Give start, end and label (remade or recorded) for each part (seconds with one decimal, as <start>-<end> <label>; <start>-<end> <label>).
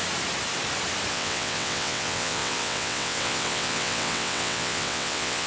0.0-1.1 recorded; 1.1-5.5 remade